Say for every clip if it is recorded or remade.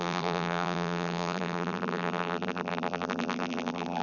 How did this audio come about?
remade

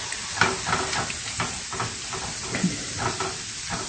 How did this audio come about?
recorded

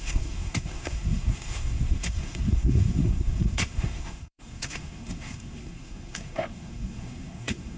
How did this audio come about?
remade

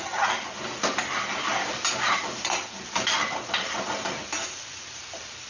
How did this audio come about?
recorded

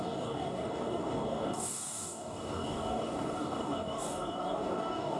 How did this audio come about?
remade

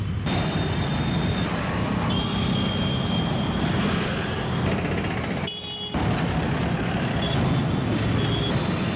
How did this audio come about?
recorded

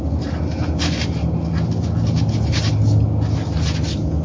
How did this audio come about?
recorded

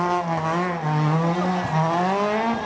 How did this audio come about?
recorded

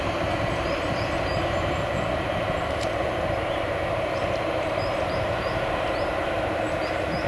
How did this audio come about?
remade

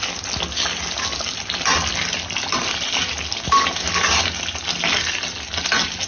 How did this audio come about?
recorded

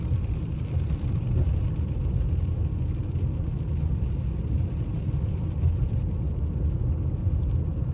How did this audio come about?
recorded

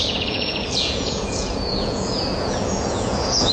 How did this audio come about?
remade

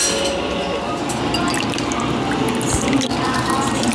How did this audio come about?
recorded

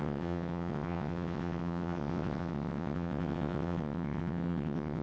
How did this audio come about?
remade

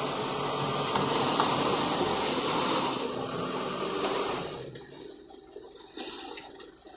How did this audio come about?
recorded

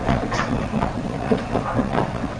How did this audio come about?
remade